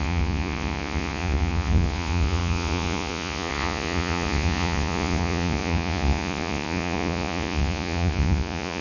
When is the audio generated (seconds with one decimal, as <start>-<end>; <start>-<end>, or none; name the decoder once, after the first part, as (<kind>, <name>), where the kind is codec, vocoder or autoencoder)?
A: 0.0-8.8 (vocoder, Vocos)